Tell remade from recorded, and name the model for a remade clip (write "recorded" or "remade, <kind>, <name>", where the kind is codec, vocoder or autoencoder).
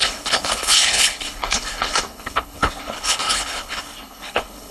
remade, codec, HILCodec